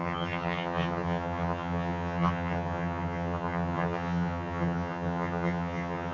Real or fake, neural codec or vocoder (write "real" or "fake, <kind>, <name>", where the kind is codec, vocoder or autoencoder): fake, vocoder, HiFi-GAN